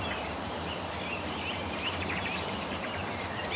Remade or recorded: remade